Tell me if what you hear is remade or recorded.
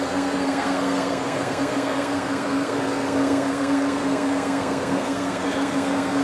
remade